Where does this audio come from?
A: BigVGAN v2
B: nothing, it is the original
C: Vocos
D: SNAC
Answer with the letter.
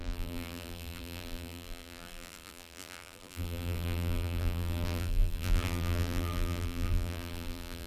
A